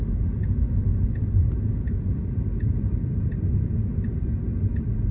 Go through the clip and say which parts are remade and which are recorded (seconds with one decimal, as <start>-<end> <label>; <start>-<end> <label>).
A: 0.0-2.1 recorded; 2.1-3.3 remade; 3.3-5.1 recorded